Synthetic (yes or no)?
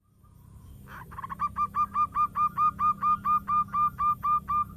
no